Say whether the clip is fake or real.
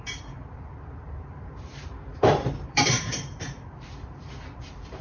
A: fake